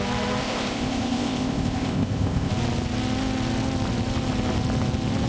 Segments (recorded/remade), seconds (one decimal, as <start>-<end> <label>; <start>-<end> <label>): 0.0-0.4 recorded; 0.4-2.5 remade; 2.5-5.3 recorded

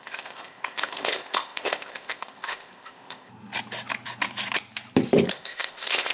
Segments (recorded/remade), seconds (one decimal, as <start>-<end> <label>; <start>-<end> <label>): 0.0-3.3 remade; 3.3-5.3 recorded; 5.3-6.1 remade

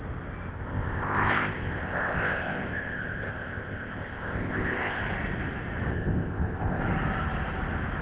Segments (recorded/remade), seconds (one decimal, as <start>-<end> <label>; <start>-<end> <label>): 0.0-0.5 recorded; 0.5-5.0 remade; 5.0-5.9 recorded; 5.9-6.8 remade; 6.8-8.0 recorded